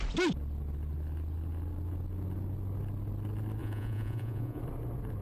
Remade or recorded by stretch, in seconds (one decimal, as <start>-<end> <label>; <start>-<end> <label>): 0.0-3.6 recorded; 3.6-4.6 remade; 4.6-5.2 recorded